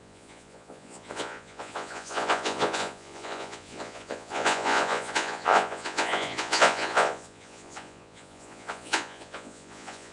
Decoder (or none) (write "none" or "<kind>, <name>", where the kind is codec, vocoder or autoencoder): vocoder, Vocos